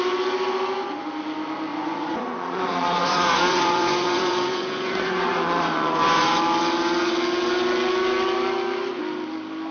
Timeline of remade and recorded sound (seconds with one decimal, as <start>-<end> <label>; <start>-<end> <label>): 0.0-1.7 recorded; 1.7-6.4 remade; 6.4-9.7 recorded